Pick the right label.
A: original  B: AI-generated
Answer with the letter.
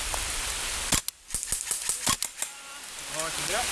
A